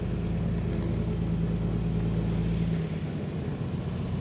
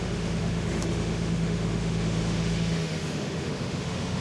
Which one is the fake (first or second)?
second